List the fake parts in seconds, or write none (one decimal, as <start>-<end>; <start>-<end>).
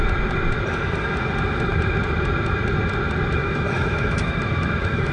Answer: 3.4-5.1